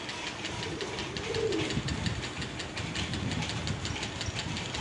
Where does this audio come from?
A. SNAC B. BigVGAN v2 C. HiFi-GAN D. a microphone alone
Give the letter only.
D